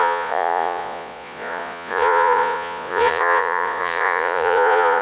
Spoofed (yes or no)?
yes